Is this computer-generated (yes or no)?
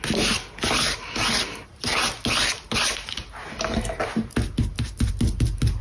no